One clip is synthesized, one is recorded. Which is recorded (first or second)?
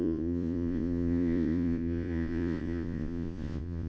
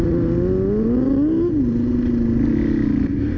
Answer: second